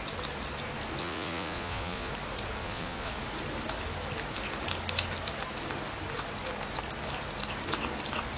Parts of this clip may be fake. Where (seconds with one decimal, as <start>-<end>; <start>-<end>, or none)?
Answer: 1.0-2.1; 2.6-3.1